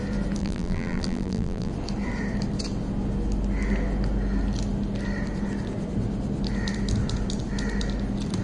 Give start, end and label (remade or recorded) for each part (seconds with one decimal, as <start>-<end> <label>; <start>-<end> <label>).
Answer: 0.0-0.4 recorded; 0.4-1.7 remade; 1.7-8.4 recorded